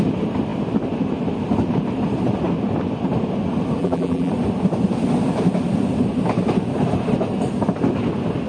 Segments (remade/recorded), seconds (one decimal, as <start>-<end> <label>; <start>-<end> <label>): 0.0-3.8 recorded; 3.8-4.3 remade; 4.3-8.5 recorded